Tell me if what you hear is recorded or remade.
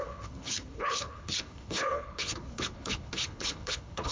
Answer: remade